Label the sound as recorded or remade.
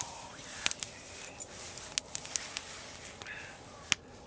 recorded